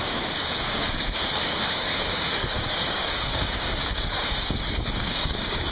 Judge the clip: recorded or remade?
remade